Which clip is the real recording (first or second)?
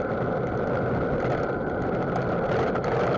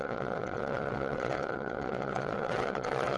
first